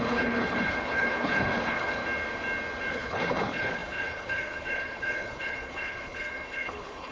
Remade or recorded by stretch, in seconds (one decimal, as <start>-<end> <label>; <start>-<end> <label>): 0.0-2.0 remade; 2.0-2.9 recorded; 2.9-7.1 remade